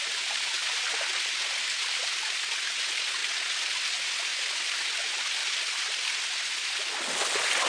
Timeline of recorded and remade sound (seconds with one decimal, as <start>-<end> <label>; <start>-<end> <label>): 0.0-7.7 recorded